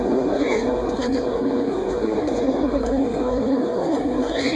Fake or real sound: fake